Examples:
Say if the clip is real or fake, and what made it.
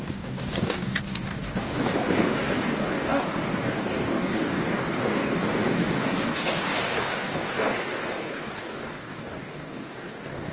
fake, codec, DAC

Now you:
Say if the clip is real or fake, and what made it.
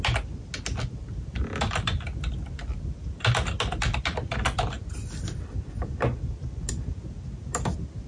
real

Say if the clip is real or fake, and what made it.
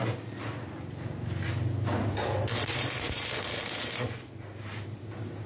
real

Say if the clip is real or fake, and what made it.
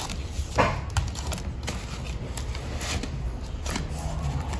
real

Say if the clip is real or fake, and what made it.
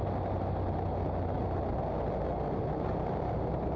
real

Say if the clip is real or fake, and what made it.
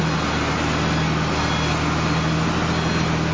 real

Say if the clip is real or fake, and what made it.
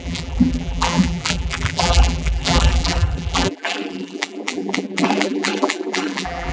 fake, vocoder, BigVGAN v2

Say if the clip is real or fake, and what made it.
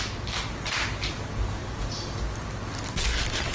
real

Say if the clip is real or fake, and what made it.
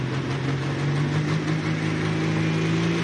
real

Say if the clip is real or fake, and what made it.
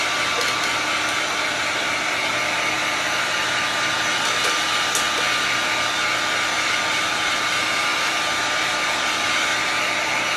real